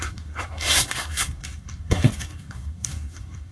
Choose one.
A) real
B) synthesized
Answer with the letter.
B